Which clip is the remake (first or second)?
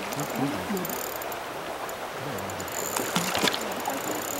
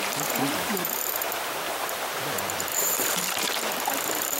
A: second